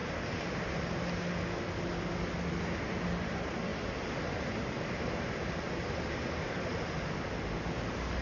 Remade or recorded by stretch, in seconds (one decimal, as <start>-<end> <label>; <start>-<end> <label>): 0.0-0.9 remade; 0.9-3.7 recorded; 3.7-7.2 remade; 7.2-8.2 recorded